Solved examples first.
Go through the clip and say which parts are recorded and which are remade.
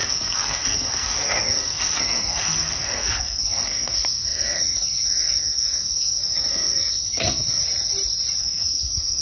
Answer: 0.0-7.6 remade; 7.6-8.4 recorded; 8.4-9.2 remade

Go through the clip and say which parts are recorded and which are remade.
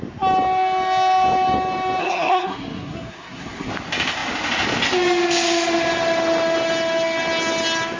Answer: 0.0-2.0 recorded; 2.0-3.7 remade; 3.7-8.0 recorded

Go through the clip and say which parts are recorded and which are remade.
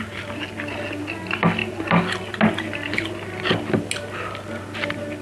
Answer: 0.0-5.2 recorded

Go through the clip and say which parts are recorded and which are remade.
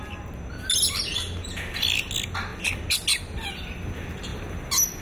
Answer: 0.0-5.0 recorded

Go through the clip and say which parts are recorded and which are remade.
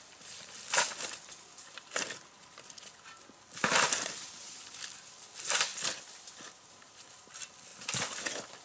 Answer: 0.0-8.6 recorded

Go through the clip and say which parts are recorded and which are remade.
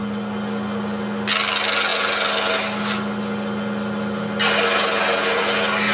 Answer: 0.0-5.9 recorded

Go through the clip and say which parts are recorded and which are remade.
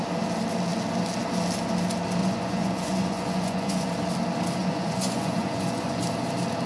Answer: 0.0-2.2 recorded; 2.2-3.9 remade; 3.9-4.6 recorded; 4.6-6.0 remade; 6.0-6.7 recorded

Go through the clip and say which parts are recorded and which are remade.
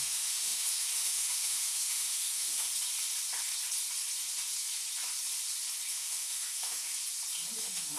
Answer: 0.0-2.7 remade; 2.7-5.9 recorded; 5.9-6.9 remade; 6.9-7.6 recorded; 7.6-8.0 remade